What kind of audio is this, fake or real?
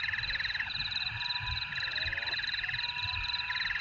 real